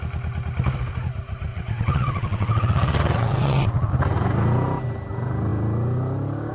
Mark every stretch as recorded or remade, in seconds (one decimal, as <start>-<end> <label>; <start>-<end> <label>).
0.0-1.5 recorded; 1.5-3.9 remade; 3.9-6.5 recorded